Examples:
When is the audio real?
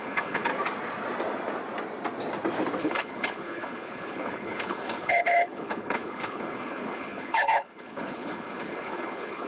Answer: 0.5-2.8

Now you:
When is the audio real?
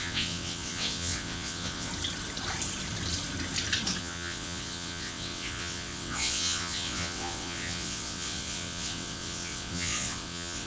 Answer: 1.9-4.0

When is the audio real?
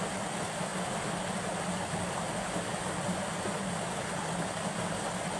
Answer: 0.0-5.4